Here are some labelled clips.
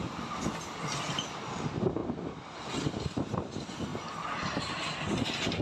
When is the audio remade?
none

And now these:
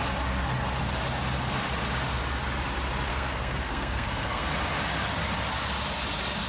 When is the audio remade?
3.1-4.5 (codec, SNAC)

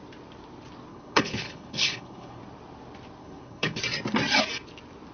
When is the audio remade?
0.9-2.4 (codec, HILCodec); 3.2-3.8

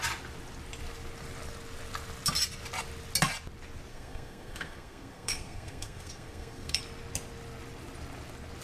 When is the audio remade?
3.9-6.8 (codec, SNAC)

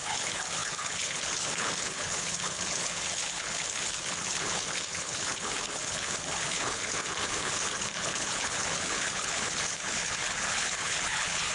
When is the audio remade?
0.0-11.5 (codec, HILCodec)

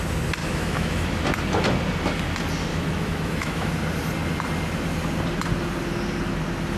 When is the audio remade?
0.4-1.2 (autoencoder, DAC-VAE); 2.7-3.7

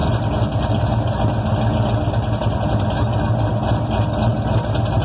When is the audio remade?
none

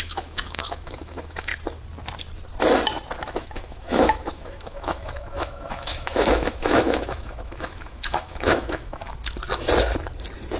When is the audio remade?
0.0-1.5 (autoencoder, DAC-VAE); 3.3-9.1